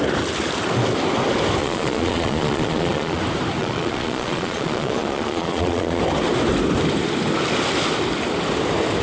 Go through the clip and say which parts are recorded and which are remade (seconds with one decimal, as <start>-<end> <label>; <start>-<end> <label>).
0.0-1.6 recorded; 1.6-3.2 remade; 3.2-3.6 recorded; 3.6-6.0 remade; 6.0-9.0 recorded

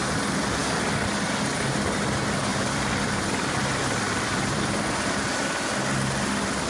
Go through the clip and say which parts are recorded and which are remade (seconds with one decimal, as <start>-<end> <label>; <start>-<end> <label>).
0.0-2.5 recorded; 2.5-4.9 remade; 4.9-6.7 recorded

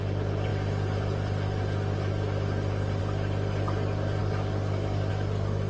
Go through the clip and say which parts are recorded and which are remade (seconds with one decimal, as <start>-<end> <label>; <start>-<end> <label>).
0.0-4.2 recorded; 4.2-5.1 remade; 5.1-5.7 recorded

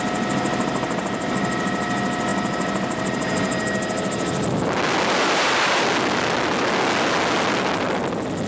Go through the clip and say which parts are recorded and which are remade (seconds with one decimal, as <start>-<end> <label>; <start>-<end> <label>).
0.0-8.5 recorded

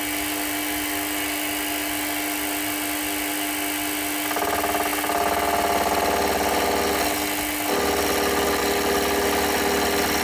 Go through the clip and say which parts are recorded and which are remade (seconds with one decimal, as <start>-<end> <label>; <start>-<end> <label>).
0.0-10.2 recorded

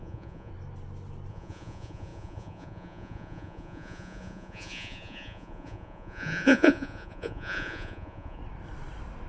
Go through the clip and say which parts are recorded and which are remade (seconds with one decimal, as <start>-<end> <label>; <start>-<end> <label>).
0.0-0.5 remade; 0.5-1.3 recorded; 1.3-8.4 remade; 8.4-9.3 recorded

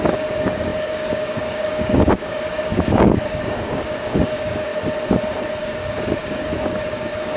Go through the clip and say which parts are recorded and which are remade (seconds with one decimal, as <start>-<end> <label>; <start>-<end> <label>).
0.0-4.7 remade; 4.7-5.6 recorded; 5.6-7.4 remade

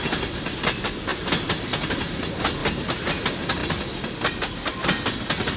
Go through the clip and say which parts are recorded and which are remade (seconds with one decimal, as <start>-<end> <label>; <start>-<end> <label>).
0.0-5.6 recorded